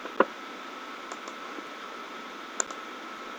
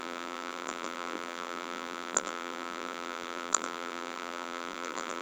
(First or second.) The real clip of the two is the first